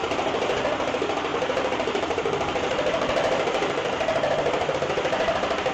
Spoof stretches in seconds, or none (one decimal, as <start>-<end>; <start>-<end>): 0.0-0.9; 1.3-4.7